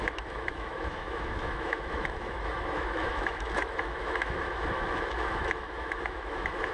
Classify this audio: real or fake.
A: fake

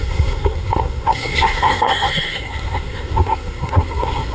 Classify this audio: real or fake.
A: fake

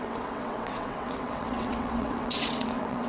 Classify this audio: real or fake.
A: fake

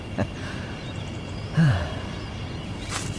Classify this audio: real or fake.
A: fake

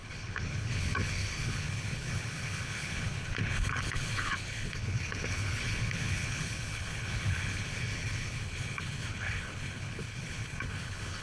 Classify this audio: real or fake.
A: fake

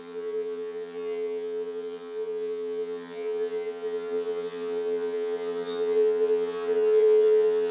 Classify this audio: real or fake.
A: fake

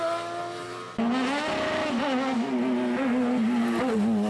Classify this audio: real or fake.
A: real